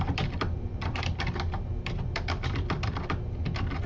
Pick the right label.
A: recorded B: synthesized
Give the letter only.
B